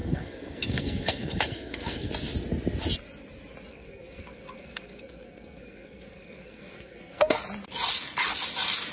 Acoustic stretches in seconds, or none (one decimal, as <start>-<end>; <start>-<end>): 2.1-3.7; 7.4-8.9